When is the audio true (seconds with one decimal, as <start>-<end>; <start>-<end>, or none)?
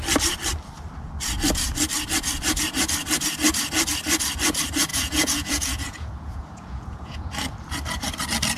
0.0-4.9; 7.3-8.6